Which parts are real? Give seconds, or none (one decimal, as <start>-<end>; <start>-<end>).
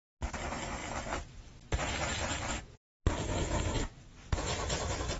0.0-5.2